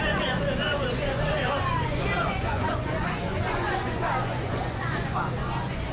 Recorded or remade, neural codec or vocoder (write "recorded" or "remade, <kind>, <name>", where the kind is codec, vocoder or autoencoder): remade, vocoder, Vocos